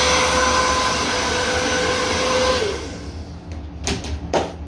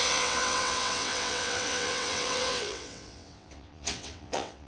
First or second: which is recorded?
first